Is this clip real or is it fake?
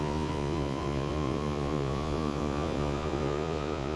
fake